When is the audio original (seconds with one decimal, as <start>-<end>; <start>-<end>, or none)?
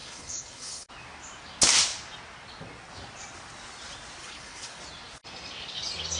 0.9-4.2; 4.8-6.2